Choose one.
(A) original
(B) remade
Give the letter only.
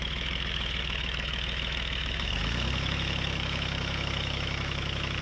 B